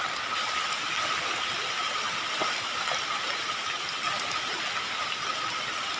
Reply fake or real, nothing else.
real